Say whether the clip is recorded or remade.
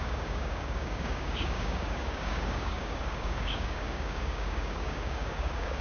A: remade